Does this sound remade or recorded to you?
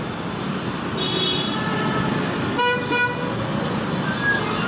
recorded